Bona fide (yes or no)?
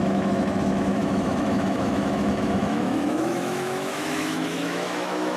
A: no